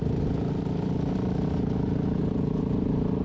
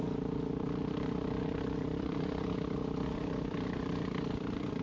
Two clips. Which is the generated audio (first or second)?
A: second